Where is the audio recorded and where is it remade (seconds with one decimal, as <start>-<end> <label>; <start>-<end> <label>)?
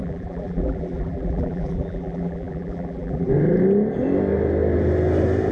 0.0-3.3 remade; 3.3-5.5 recorded